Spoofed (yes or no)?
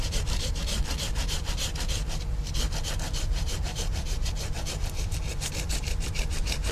yes